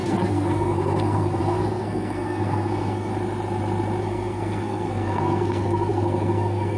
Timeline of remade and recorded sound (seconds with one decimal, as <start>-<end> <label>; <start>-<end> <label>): 0.0-3.1 remade; 3.1-4.0 recorded; 4.0-6.8 remade

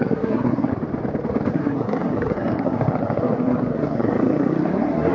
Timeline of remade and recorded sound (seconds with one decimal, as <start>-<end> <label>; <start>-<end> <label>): 0.0-0.7 remade; 0.7-1.5 recorded; 1.5-5.1 remade

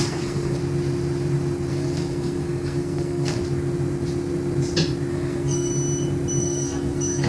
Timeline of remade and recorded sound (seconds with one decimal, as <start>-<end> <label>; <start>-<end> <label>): 0.0-0.6 remade; 0.6-1.7 recorded; 1.7-3.4 remade; 3.4-5.1 recorded; 5.1-5.7 remade; 5.7-6.4 recorded; 6.4-7.3 remade

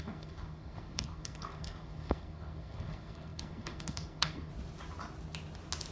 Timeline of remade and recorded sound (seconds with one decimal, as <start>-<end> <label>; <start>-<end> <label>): 0.0-4.5 remade; 4.5-5.9 recorded